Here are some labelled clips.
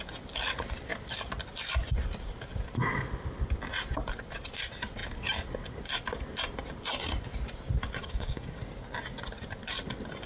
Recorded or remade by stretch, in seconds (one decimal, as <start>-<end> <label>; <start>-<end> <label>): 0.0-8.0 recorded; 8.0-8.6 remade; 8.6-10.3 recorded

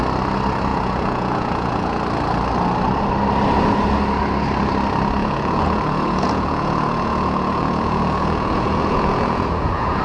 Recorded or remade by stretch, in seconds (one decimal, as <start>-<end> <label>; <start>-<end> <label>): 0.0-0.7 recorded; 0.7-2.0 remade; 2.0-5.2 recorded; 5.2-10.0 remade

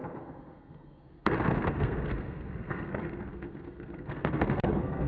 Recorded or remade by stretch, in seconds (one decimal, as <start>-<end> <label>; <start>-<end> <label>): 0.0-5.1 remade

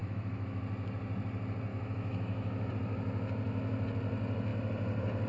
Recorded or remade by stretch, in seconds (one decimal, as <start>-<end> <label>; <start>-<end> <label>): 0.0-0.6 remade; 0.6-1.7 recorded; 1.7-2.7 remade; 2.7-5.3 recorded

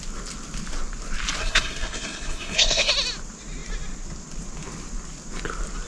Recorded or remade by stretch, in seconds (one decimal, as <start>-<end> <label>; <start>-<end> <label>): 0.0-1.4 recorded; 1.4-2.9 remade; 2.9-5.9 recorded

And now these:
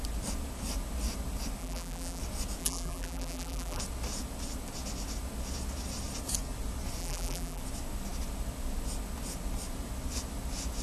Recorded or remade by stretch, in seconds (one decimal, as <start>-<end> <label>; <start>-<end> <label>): 0.0-1.6 recorded; 1.6-2.2 remade; 2.2-2.6 recorded; 2.6-3.8 remade; 3.8-7.0 recorded; 7.0-7.6 remade; 7.6-10.8 recorded